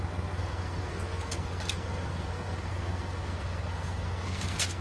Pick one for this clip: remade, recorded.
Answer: remade